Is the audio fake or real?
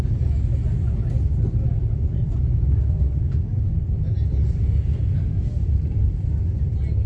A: real